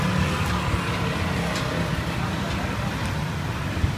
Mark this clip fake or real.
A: real